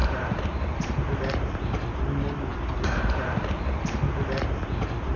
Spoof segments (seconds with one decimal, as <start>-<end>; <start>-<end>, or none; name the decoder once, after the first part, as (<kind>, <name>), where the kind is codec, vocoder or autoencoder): 0.0-1.0 (vocoder, BigVGAN v2)